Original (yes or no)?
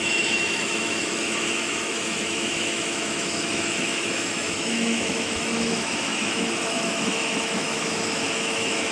no